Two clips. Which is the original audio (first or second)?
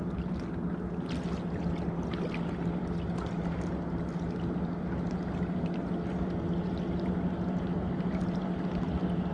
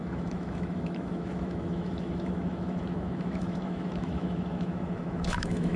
first